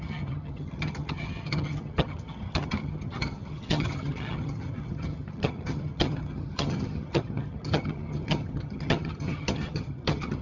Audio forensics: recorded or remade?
remade